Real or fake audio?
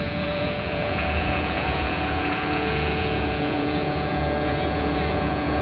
fake